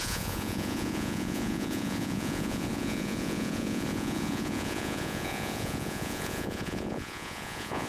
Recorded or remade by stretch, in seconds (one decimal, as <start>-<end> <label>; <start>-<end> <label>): 0.0-7.9 remade